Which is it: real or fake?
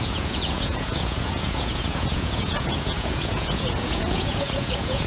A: fake